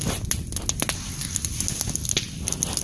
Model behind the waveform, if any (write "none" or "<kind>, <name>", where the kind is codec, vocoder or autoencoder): none